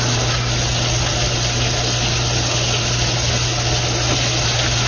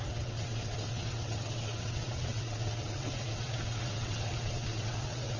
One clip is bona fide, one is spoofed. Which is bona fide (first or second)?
first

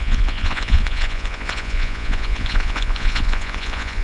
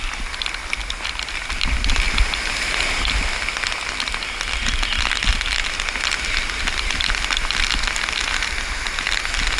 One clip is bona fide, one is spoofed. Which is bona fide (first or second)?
second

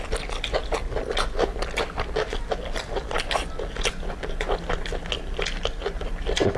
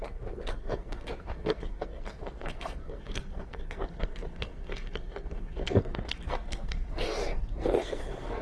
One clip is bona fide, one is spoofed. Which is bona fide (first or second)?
first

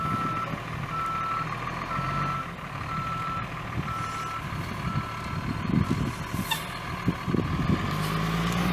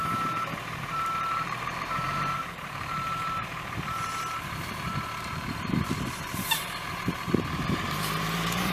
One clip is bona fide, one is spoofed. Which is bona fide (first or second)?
first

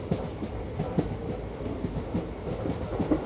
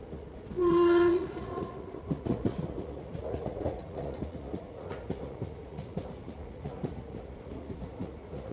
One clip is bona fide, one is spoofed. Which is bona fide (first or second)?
first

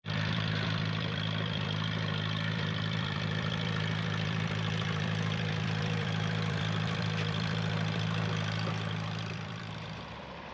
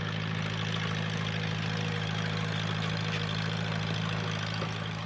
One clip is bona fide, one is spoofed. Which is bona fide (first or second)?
second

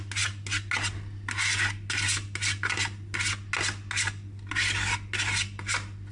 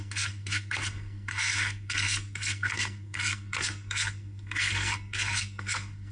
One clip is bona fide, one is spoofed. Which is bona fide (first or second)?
first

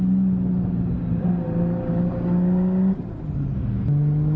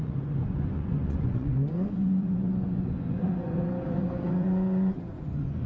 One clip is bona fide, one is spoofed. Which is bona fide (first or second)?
first